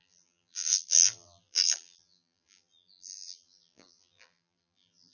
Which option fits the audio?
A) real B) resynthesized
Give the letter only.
B